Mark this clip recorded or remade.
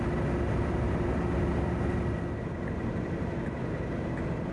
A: recorded